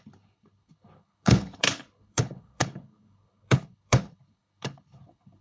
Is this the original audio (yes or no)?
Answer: no